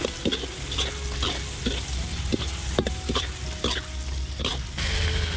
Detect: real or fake real